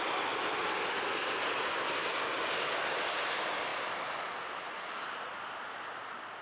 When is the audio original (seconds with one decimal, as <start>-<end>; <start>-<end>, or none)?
0.0-6.4